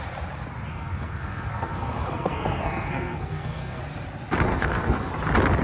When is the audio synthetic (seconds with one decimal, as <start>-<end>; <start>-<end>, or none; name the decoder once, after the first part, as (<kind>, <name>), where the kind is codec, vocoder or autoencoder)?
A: 0.7-3.8 (codec, SNAC); 4.5-5.1